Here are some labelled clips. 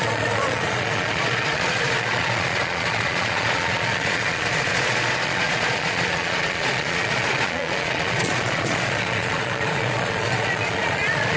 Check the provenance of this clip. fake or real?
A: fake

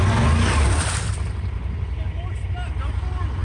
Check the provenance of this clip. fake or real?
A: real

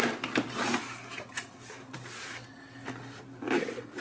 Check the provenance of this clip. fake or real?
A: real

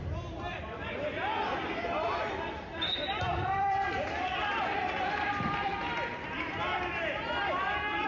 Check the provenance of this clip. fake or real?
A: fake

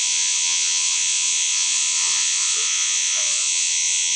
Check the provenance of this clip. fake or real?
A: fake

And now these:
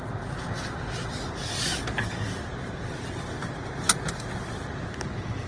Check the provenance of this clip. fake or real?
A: real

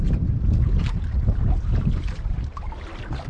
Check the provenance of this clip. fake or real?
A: real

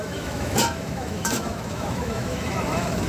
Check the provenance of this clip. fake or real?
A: fake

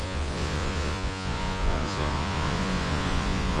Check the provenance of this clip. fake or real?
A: fake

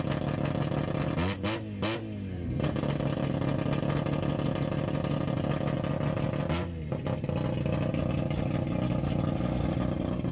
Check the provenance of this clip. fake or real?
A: real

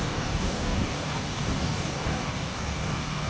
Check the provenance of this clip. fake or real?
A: fake